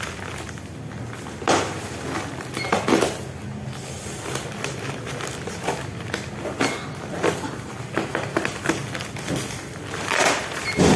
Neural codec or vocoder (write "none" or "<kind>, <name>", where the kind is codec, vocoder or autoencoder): none